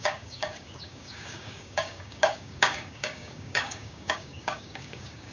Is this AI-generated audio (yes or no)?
yes